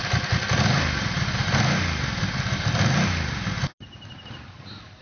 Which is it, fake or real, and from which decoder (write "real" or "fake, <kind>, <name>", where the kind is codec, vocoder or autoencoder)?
real